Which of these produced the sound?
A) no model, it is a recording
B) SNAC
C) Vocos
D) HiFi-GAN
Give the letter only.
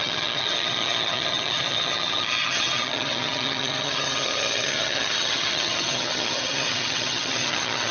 D